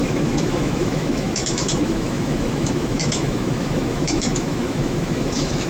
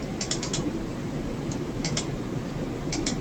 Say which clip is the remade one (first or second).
first